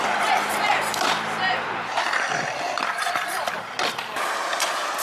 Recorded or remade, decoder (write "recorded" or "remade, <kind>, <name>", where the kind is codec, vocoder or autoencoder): recorded